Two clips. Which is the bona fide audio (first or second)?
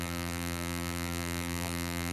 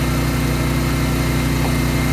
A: second